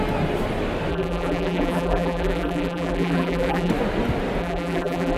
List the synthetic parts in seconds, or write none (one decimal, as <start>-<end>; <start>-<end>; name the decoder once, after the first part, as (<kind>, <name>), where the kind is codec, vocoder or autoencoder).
0.9-3.7 (vocoder, BigVGAN v2); 4.4-5.2